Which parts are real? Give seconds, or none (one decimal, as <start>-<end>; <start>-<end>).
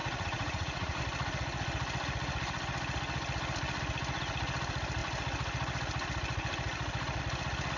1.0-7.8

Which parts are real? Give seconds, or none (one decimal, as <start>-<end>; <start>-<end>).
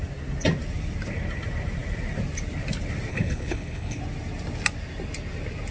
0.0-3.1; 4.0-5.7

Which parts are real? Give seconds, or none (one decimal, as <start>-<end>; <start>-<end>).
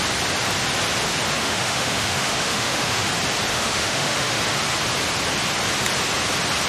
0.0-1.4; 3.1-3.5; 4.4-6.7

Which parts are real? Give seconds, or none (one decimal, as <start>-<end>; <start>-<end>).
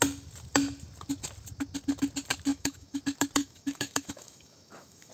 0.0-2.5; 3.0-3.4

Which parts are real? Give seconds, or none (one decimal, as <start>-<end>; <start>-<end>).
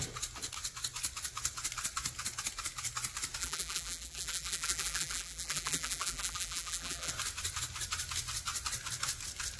0.0-3.4; 7.1-9.6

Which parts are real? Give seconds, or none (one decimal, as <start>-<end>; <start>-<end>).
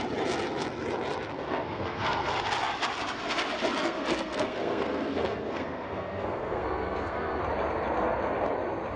0.0-1.3; 2.3-3.8; 7.4-9.0